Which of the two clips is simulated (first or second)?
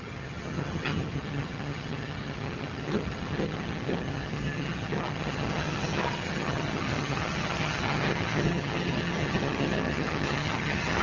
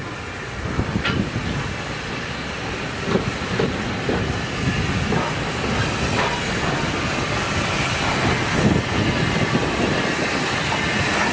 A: first